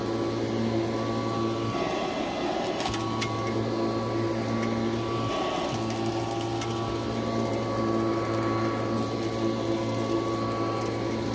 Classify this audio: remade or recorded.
recorded